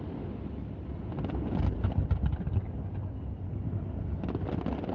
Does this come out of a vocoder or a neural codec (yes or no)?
no